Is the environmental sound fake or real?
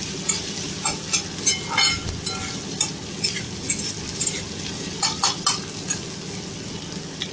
real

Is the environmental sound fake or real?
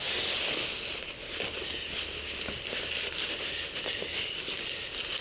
real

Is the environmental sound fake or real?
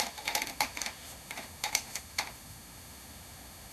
fake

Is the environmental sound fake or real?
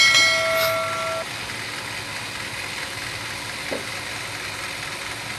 real